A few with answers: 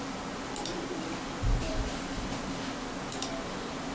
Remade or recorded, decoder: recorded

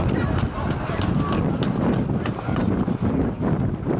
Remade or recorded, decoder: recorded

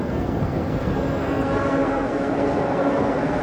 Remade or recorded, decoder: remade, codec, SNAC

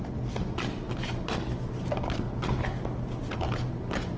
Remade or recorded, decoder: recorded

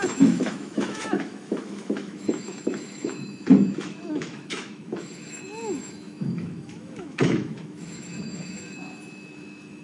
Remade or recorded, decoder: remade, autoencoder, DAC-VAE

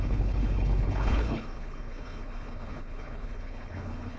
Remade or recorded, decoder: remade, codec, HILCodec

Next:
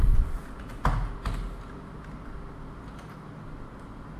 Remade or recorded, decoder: recorded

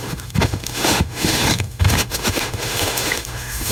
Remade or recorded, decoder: remade, autoencoder, DAC-VAE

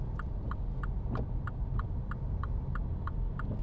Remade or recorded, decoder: recorded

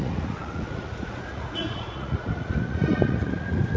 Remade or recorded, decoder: remade, vocoder, Vocos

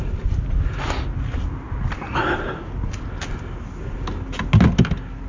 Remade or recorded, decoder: recorded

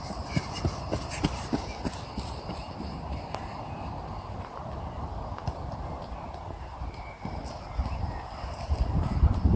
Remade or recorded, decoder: recorded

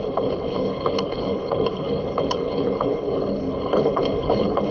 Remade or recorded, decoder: remade, codec, HILCodec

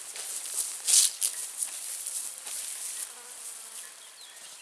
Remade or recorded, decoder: recorded